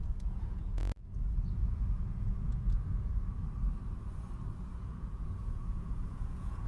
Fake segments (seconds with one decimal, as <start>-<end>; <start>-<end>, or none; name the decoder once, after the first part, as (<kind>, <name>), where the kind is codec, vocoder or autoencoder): 0.0-0.8 (vocoder, Vocos); 1.5-3.1; 4.8-6.7